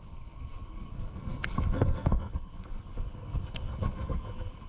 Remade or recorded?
remade